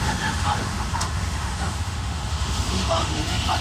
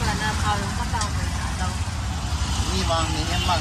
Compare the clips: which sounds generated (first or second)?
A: first